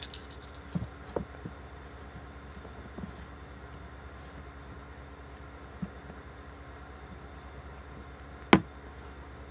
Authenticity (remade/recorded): recorded